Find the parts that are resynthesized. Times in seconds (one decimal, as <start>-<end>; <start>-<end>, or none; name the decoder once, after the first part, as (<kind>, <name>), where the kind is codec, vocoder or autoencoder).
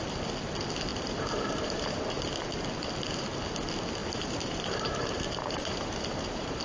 0.9-2.2 (vocoder, BigVGAN v2); 4.0-6.6